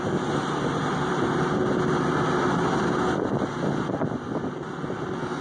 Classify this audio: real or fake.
real